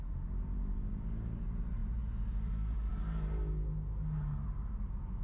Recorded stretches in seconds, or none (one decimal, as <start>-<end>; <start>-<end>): 0.0-5.2